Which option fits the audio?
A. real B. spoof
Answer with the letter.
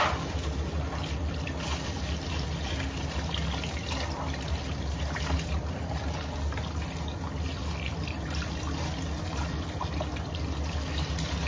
A